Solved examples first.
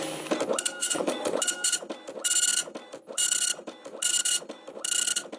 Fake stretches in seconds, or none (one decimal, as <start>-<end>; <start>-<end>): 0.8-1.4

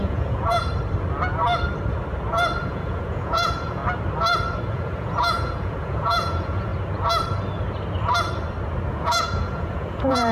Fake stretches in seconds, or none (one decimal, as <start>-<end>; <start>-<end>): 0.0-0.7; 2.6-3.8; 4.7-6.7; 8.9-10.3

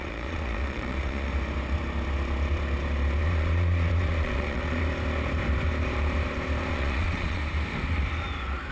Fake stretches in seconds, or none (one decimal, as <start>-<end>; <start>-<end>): 0.0-1.3; 3.2-4.8; 6.7-7.4

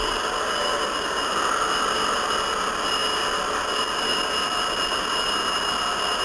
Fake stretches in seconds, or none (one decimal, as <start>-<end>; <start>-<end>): none

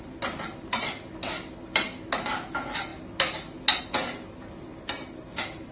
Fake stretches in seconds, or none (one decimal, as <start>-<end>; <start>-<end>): none

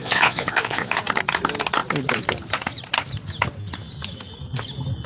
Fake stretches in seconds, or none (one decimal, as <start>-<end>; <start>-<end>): 0.0-1.0

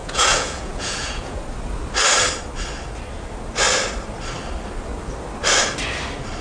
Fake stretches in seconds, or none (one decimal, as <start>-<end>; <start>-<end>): 0.0-1.4